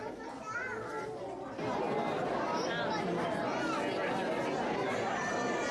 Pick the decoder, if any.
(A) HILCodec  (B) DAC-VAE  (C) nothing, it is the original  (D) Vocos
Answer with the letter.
C